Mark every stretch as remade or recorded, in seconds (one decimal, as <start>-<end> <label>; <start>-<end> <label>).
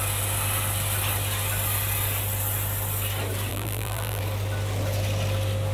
0.0-3.5 recorded; 3.5-4.2 remade; 4.2-5.7 recorded